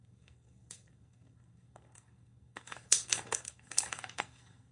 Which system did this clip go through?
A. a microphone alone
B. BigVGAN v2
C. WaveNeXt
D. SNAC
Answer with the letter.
D